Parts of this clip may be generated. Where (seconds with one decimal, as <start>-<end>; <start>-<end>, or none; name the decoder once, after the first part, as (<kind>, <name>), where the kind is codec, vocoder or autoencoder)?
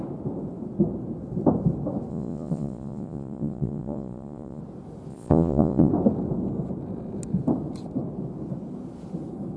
2.1-4.6 (vocoder, Vocos); 5.1-5.9